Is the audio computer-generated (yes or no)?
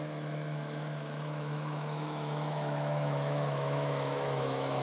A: yes